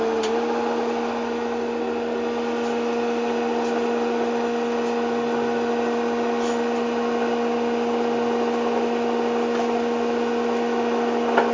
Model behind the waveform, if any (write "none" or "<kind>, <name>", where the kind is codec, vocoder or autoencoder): none